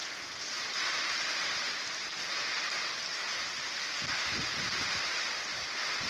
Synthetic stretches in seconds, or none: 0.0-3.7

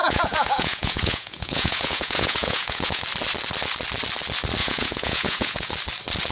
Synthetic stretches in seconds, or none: 0.0-3.0; 4.6-5.7

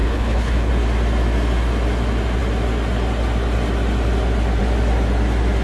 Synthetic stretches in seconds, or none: 0.0-0.7

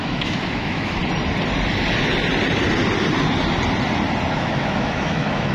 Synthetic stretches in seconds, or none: 0.0-1.0; 4.3-5.5